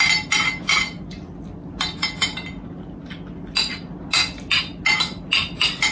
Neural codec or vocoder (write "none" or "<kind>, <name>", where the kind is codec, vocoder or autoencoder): none